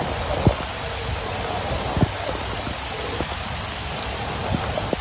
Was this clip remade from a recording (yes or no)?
no